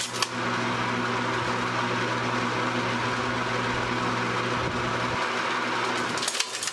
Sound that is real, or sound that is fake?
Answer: real